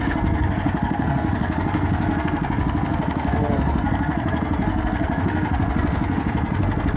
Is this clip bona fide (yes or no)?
no